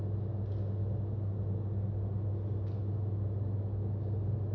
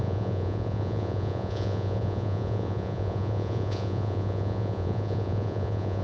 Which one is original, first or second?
first